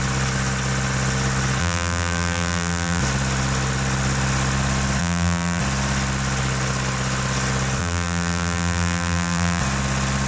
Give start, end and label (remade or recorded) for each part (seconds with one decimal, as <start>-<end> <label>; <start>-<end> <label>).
0.0-1.6 recorded; 1.6-3.0 remade; 3.0-5.0 recorded; 5.0-5.6 remade; 5.6-7.8 recorded; 7.8-9.6 remade; 9.6-10.3 recorded